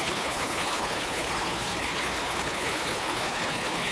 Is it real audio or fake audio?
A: fake